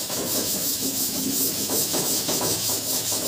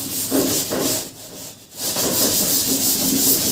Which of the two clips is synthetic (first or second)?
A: first